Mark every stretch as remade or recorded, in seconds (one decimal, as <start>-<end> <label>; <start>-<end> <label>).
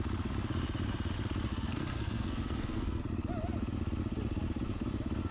0.0-1.5 recorded; 1.5-3.0 remade; 3.0-5.3 recorded